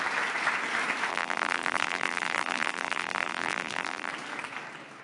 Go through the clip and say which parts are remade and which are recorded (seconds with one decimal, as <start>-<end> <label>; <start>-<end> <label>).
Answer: 0.0-1.1 recorded; 1.1-4.1 remade; 4.1-5.0 recorded